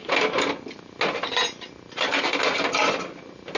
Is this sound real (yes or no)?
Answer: yes